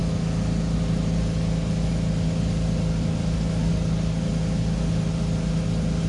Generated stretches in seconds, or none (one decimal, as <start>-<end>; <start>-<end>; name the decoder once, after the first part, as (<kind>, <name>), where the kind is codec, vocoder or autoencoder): none